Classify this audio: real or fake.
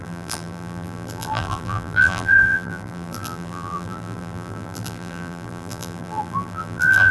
fake